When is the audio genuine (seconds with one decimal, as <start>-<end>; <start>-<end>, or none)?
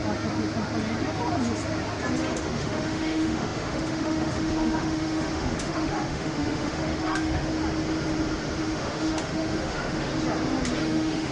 0.0-2.2; 7.5-8.6; 10.1-10.8